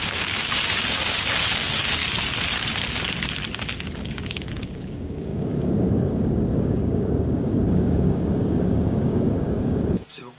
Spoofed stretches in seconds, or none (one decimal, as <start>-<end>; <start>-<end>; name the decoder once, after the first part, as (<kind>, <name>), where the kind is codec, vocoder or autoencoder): 0.0-2.0 (codec, DAC); 3.9-10.4